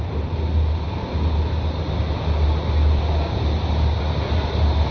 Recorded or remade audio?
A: recorded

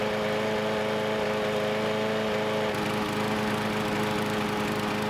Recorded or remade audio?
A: recorded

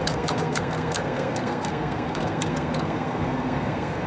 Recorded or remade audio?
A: remade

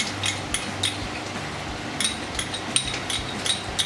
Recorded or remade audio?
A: recorded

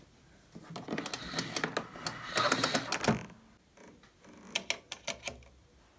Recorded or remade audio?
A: recorded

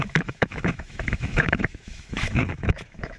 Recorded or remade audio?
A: remade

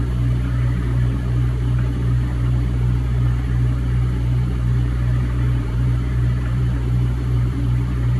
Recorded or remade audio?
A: remade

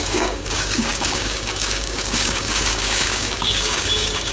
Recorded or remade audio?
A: remade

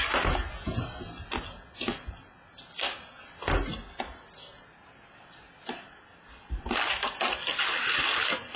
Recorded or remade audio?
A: recorded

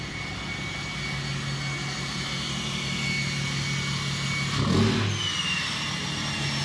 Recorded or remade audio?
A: recorded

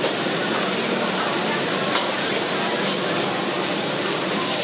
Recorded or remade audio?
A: remade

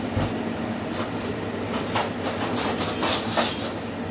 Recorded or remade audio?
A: recorded